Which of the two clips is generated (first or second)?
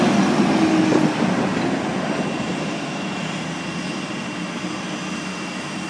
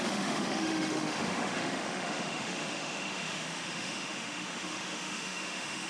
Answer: second